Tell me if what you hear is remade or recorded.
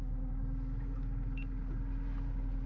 recorded